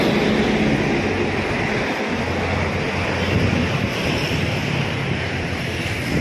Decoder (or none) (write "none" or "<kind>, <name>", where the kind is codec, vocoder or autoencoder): none